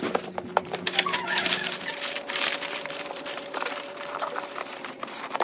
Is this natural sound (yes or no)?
no